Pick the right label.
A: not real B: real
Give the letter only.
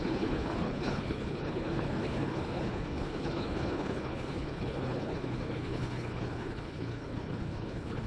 A